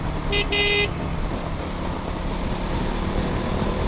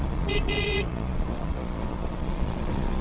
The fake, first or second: second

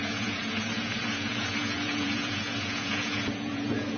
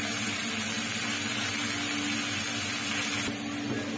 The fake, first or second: first